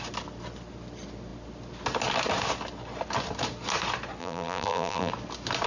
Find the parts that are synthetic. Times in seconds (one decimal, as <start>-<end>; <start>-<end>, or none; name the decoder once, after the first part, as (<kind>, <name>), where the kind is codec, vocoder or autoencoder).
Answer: 4.2-5.1 (vocoder, BigVGAN v2)